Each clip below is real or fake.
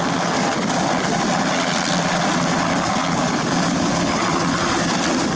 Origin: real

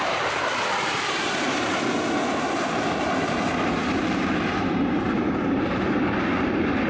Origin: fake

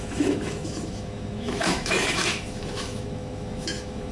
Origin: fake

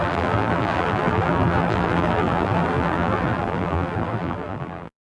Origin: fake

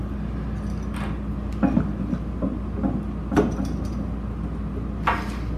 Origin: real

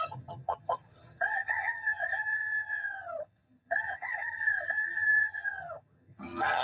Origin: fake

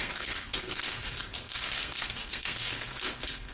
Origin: fake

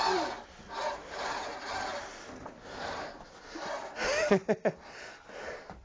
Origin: real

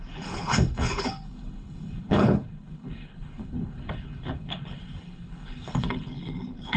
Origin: fake